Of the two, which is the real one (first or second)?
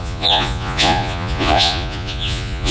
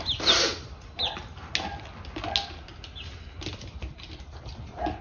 second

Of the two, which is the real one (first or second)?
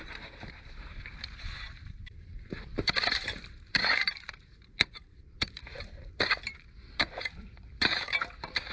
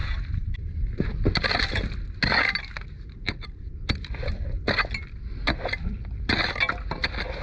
second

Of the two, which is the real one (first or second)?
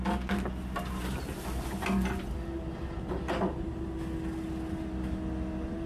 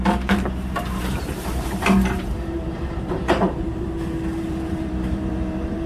first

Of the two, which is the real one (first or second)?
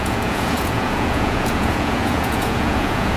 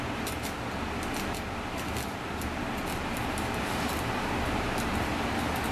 second